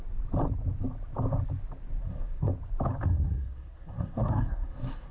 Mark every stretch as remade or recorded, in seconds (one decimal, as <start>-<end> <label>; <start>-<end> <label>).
0.0-2.0 recorded; 2.0-2.5 remade; 2.5-3.1 recorded; 3.1-5.1 remade